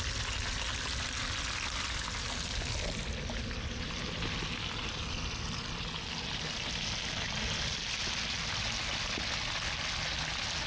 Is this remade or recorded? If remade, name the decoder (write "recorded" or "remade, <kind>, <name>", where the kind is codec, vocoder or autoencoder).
recorded